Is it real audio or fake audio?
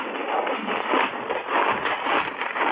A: real